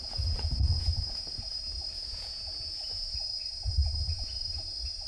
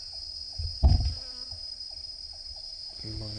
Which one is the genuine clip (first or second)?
second